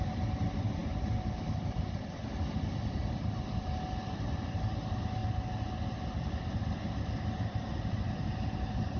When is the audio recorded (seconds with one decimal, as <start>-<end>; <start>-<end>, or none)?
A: 0.0-9.0